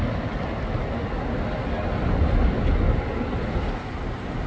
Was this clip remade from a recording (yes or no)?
no